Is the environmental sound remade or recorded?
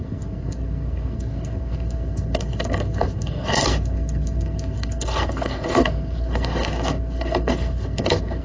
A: remade